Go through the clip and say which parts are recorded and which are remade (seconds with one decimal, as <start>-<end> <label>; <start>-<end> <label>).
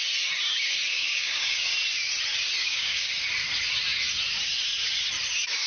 0.0-0.9 recorded; 0.9-1.7 remade; 1.7-2.6 recorded; 2.6-3.1 remade; 3.1-5.7 recorded